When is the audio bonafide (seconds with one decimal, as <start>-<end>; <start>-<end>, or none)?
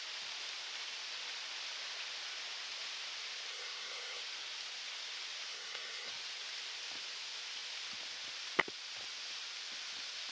0.0-3.5; 4.2-5.5; 6.1-10.3